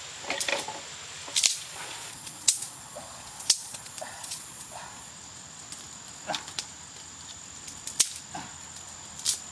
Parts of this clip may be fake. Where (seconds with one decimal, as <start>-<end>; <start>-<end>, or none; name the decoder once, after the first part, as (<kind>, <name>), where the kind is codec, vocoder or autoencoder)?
1.5-5.1 (vocoder, Vocos)